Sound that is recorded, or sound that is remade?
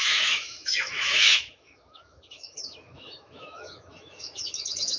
remade